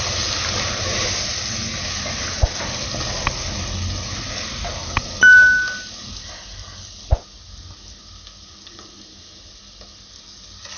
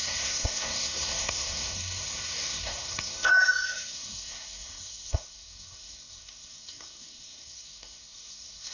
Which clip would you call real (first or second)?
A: first